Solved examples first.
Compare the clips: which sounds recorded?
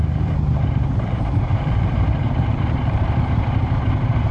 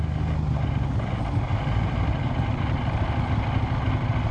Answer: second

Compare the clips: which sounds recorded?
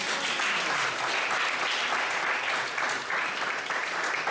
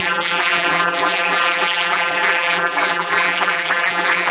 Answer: first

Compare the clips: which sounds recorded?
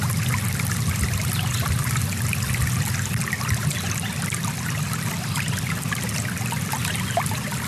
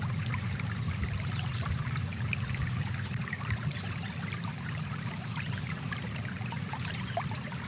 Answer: first